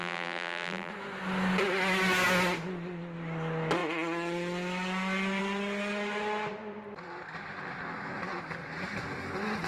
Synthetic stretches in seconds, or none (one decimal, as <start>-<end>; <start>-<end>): 0.0-0.9